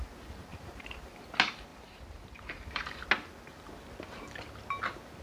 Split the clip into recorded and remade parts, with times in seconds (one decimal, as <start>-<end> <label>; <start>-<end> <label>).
0.0-0.5 recorded; 0.5-1.2 remade; 1.2-1.7 recorded; 1.7-3.0 remade; 3.0-5.2 recorded